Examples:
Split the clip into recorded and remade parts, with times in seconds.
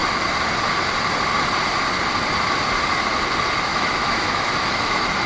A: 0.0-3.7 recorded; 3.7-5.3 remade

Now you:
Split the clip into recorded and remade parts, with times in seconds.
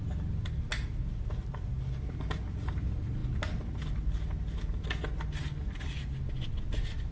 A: 0.0-7.1 recorded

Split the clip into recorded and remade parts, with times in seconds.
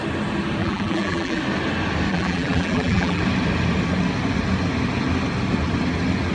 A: 0.0-0.6 recorded; 0.6-1.4 remade; 1.4-2.1 recorded; 2.1-3.2 remade; 3.2-6.3 recorded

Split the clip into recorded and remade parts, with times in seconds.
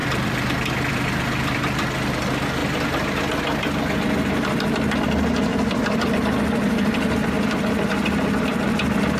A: 0.0-2.2 remade; 2.2-5.5 recorded; 5.5-6.4 remade; 6.4-9.2 recorded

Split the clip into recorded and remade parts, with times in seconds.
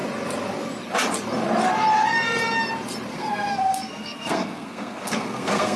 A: 0.0-3.1 recorded; 3.1-5.8 remade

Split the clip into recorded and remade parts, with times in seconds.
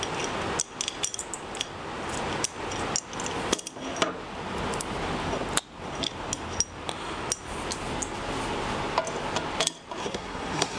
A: 0.0-10.0 recorded; 10.0-10.8 remade